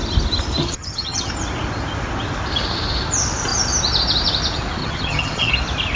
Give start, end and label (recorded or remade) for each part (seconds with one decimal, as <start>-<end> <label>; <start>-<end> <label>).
0.0-0.6 recorded; 0.6-1.3 remade; 1.3-4.8 recorded; 4.8-5.5 remade; 5.5-6.0 recorded